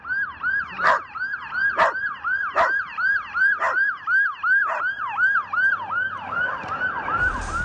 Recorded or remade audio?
remade